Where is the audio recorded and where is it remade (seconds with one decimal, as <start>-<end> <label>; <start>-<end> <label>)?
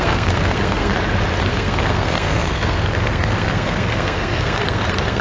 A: 0.0-0.9 remade; 0.9-1.5 recorded; 1.5-5.2 remade